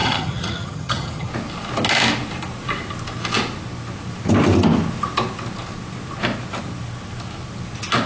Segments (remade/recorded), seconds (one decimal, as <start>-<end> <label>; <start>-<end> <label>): 0.0-1.3 remade; 1.3-8.1 recorded